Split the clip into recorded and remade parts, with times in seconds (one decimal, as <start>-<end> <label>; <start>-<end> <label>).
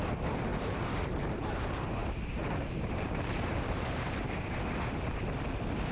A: 0.0-0.5 recorded; 0.5-1.5 remade; 1.5-2.0 recorded; 2.0-4.6 remade; 4.6-5.9 recorded